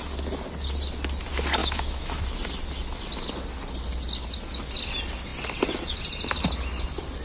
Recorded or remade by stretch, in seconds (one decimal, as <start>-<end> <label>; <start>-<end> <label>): 0.0-1.6 recorded; 1.6-2.2 remade; 2.2-7.2 recorded